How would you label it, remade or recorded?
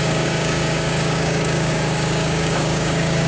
remade